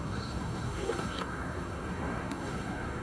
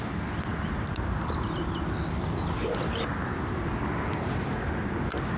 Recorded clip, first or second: second